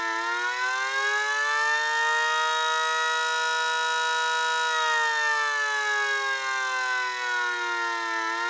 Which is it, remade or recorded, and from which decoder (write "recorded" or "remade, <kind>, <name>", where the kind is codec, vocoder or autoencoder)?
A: recorded